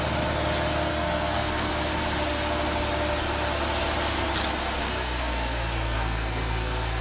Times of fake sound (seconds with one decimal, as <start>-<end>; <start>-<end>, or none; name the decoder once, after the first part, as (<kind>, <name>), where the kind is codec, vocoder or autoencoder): 0.9-1.7 (codec, SNAC); 4.8-7.0